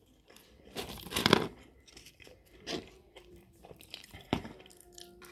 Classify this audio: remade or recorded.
remade